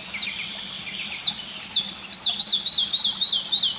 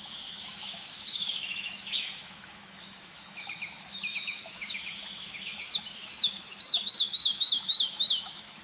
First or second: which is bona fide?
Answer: first